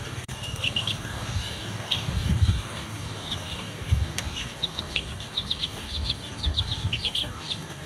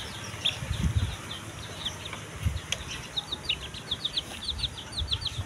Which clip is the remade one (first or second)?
first